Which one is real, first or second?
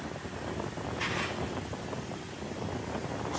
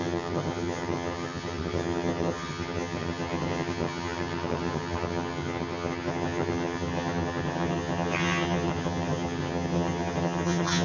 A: first